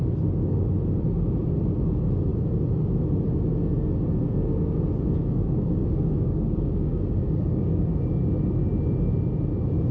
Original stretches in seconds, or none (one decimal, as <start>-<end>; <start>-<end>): 0.0-5.2; 8.0-9.9